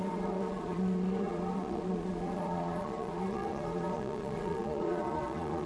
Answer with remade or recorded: remade